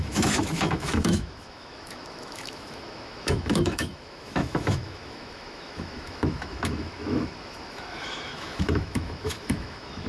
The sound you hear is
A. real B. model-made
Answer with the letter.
B